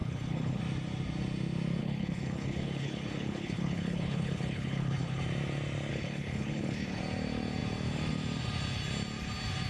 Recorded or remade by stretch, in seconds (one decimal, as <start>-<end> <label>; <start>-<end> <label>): 0.0-0.6 remade; 0.6-1.8 recorded; 1.8-5.2 remade; 5.2-5.9 recorded; 5.9-7.0 remade; 7.0-9.7 recorded